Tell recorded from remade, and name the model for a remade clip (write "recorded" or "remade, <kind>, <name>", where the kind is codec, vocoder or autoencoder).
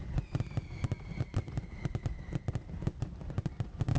recorded